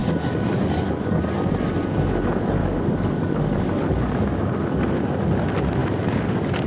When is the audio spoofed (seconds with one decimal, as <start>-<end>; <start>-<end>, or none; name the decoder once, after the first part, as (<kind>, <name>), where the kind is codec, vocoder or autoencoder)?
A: 0.0-1.2 (codec, DAC); 2.6-4.2; 5.8-6.7